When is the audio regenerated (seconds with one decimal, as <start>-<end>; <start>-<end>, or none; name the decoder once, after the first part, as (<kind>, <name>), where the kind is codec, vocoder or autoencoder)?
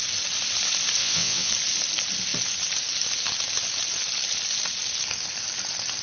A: 1.0-1.5 (vocoder, WaveNeXt)